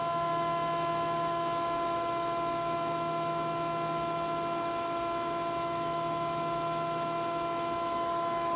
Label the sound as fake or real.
real